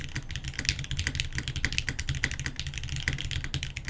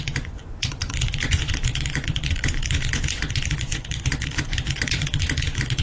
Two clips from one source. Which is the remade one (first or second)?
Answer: second